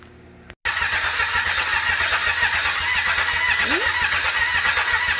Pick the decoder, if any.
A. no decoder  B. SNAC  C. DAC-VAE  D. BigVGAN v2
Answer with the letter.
A